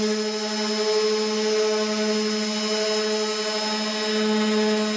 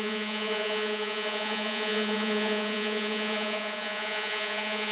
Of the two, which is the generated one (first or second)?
second